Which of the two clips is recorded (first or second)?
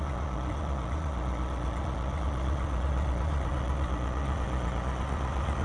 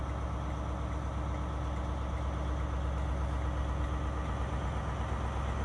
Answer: second